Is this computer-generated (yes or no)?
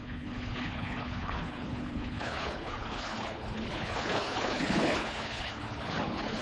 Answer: yes